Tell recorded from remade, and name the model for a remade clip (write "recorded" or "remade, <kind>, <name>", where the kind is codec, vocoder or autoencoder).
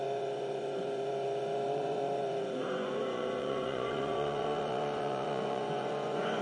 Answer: remade, vocoder, Vocos